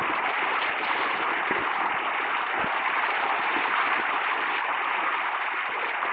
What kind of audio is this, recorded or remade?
recorded